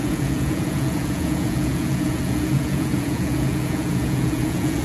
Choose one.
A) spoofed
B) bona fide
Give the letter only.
A